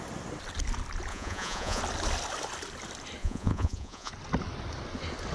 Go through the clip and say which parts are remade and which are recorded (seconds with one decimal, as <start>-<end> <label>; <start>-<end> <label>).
0.0-1.1 recorded; 1.1-1.8 remade; 1.8-3.2 recorded; 3.2-4.1 remade; 4.1-5.3 recorded